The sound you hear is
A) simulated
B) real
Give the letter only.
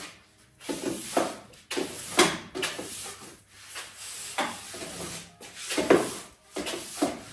B